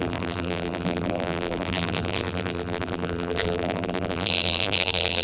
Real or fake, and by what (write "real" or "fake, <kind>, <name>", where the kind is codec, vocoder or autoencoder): fake, vocoder, BigVGAN v2